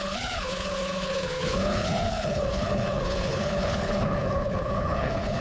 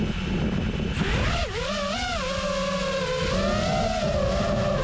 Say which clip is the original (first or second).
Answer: second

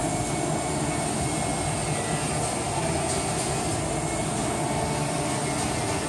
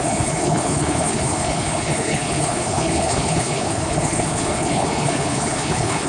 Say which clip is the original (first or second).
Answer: first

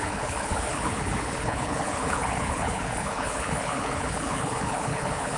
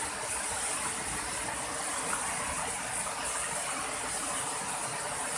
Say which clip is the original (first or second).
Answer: second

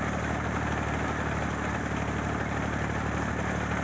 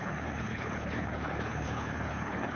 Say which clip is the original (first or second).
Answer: first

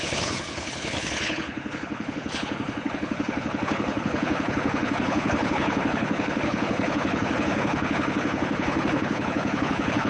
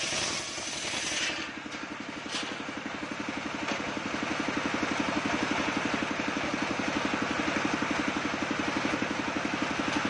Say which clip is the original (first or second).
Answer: second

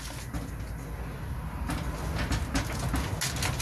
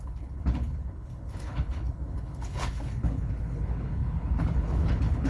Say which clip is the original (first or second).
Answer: first